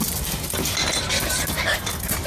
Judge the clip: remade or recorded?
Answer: recorded